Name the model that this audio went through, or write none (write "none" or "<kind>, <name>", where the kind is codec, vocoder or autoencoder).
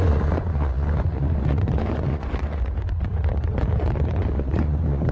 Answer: vocoder, Vocos